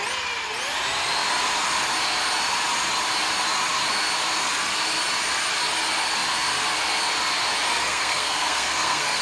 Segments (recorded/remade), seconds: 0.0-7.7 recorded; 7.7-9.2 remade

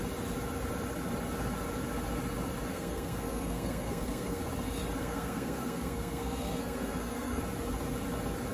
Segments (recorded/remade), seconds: 0.0-2.7 recorded; 2.7-4.4 remade; 4.4-5.0 recorded; 5.0-7.4 remade; 7.4-8.5 recorded

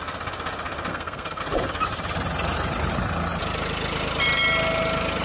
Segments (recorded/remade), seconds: 0.0-0.9 recorded; 0.9-1.4 remade; 1.4-5.2 recorded

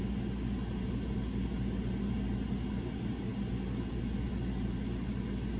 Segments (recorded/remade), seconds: 0.0-5.6 recorded

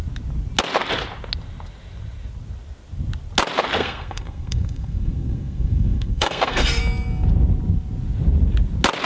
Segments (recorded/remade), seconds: 0.0-3.8 recorded; 3.8-6.8 remade; 6.8-9.1 recorded

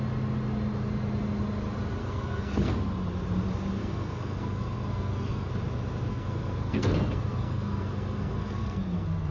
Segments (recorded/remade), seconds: 0.0-2.0 recorded; 2.0-2.7 remade; 2.7-3.8 recorded; 3.8-5.5 remade; 5.5-6.1 recorded; 6.1-9.3 remade